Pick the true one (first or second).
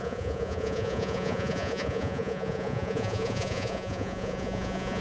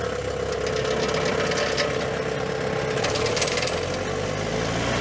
second